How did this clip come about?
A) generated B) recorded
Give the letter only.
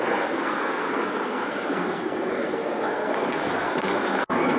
A